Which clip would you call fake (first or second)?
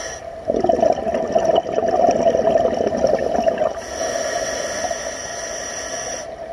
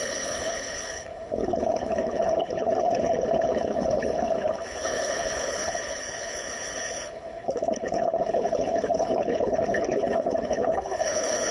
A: second